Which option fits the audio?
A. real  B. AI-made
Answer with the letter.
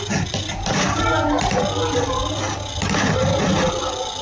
A